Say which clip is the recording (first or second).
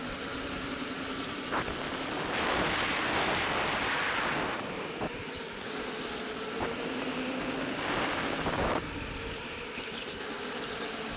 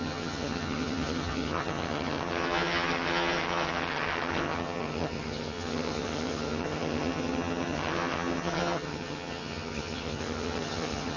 first